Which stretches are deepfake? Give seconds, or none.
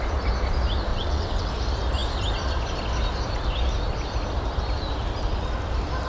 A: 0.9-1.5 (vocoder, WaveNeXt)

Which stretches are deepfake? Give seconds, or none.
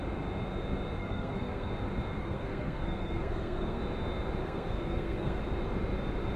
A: 1.0-1.7 (codec, SNAC); 2.2-3.8; 4.4-5.4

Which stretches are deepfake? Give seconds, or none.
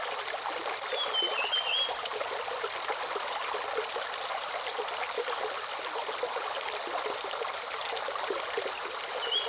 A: none